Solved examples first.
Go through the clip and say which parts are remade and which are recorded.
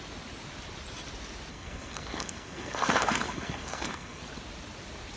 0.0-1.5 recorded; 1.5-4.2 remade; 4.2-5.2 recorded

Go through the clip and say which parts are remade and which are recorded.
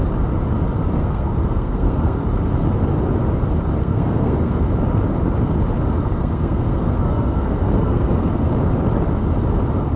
0.0-1.0 recorded; 1.0-2.2 remade; 2.2-3.8 recorded; 3.8-4.6 remade; 4.6-6.2 recorded; 6.2-8.5 remade; 8.5-10.0 recorded